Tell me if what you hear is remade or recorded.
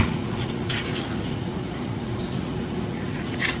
remade